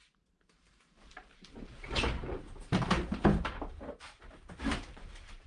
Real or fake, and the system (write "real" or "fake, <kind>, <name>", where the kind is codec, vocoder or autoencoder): fake, vocoder, BigVGAN v2